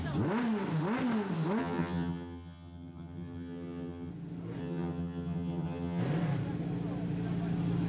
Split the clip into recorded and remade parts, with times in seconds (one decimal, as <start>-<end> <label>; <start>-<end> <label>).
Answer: 0.0-1.6 recorded; 1.6-4.1 remade; 4.1-4.6 recorded; 4.6-6.0 remade; 6.0-7.9 recorded